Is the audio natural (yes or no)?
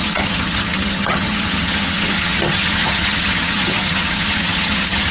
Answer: no